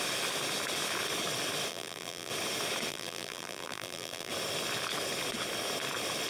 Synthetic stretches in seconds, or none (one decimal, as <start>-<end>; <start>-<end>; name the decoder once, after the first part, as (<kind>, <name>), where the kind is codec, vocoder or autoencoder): 1.7-2.3 (vocoder, BigVGAN v2); 2.9-4.3